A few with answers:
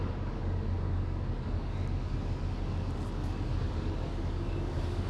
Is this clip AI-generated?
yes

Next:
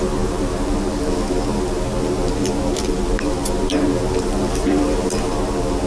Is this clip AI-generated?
yes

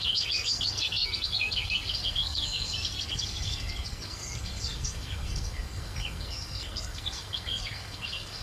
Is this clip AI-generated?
yes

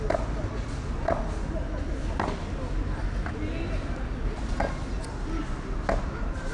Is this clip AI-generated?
no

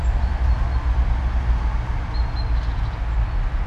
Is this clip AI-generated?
no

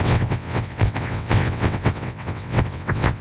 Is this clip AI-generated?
yes